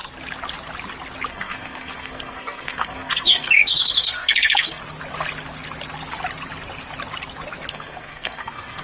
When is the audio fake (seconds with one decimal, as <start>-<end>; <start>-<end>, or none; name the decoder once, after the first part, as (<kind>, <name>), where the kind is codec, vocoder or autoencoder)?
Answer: 1.3-4.8 (codec, SNAC); 7.7-8.8